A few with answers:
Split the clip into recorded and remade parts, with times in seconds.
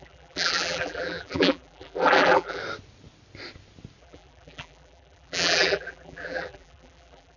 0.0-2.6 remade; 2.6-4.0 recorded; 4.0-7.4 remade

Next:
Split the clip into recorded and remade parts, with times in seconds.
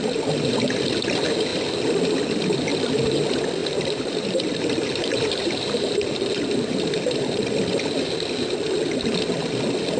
0.0-2.7 recorded; 2.7-3.2 remade; 3.2-3.6 recorded; 3.6-7.4 remade; 7.4-10.0 recorded